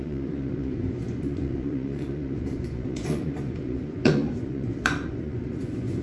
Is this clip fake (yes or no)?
yes